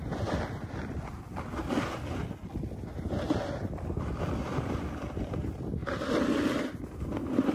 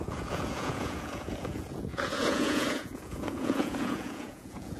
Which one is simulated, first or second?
second